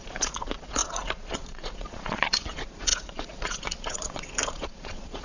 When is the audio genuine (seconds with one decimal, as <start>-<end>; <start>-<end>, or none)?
none